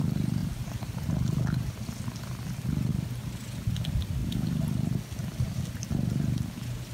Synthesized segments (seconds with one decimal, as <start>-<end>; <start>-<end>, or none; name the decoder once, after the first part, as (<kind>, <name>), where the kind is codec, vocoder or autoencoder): none